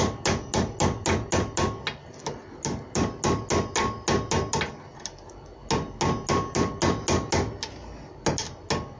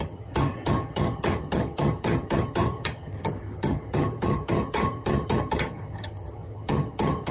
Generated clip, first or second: second